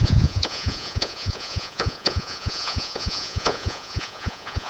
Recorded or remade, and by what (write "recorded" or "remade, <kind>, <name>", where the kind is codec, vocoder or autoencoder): remade, vocoder, Vocos